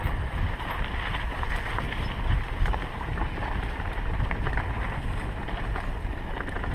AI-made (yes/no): no